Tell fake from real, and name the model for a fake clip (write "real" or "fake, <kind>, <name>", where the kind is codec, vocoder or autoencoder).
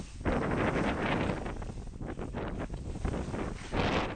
real